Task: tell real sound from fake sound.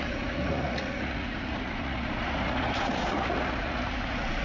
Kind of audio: fake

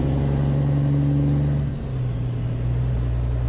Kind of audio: real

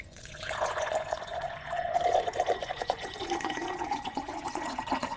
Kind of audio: fake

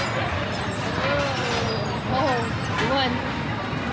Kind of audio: real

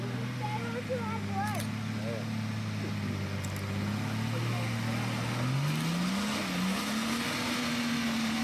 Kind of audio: real